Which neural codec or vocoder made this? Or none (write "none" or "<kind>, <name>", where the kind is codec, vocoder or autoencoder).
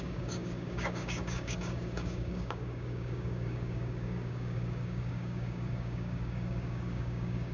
codec, DAC